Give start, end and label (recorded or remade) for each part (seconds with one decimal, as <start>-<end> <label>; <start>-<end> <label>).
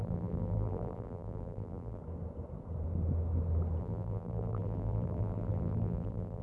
0.0-2.0 remade; 2.0-3.8 recorded; 3.8-6.4 remade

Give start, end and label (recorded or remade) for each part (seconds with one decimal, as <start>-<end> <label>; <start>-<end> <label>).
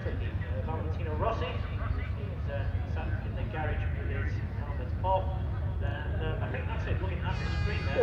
0.0-5.9 recorded; 5.9-7.1 remade; 7.1-8.0 recorded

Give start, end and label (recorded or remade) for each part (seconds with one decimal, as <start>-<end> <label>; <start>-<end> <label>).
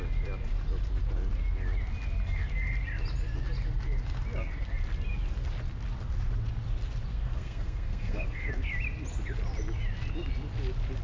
0.0-7.1 recorded; 7.1-8.5 remade; 8.5-11.0 recorded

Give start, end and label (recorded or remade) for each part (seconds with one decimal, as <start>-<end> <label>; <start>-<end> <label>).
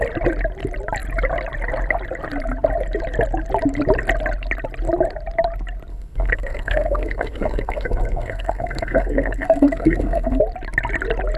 0.0-5.9 recorded; 5.9-10.4 remade; 10.4-11.4 recorded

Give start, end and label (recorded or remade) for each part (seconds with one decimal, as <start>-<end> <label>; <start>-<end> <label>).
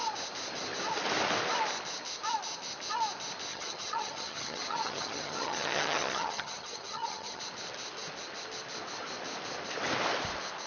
0.0-3.5 recorded; 3.5-7.4 remade; 7.4-10.7 recorded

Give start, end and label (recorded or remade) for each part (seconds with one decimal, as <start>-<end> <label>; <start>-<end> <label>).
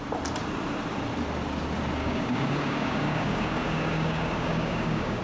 0.0-2.0 recorded; 2.0-5.2 remade